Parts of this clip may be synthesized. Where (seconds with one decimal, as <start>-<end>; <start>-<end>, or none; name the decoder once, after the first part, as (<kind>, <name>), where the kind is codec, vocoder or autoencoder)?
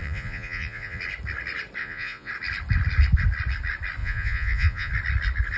0.0-1.0 (vocoder, Vocos); 1.8-2.3; 4.0-4.9